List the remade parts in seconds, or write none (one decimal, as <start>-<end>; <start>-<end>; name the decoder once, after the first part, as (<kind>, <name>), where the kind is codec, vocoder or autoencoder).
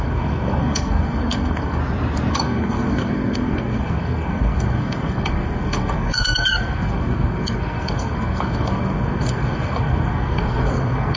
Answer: 0.0-1.8 (codec, SNAC); 2.3-11.2